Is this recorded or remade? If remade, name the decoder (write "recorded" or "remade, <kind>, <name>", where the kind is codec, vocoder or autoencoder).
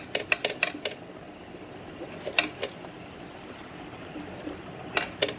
recorded